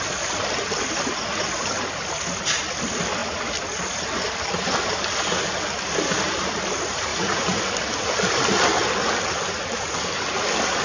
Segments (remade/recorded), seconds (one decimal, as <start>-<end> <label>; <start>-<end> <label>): 0.0-7.1 recorded; 7.1-7.6 remade; 7.6-10.8 recorded